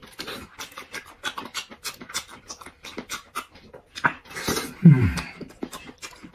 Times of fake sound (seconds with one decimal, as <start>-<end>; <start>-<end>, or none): none